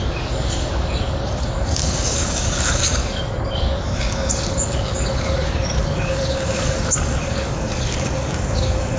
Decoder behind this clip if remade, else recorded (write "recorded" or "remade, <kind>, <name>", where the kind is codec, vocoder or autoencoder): remade, codec, DAC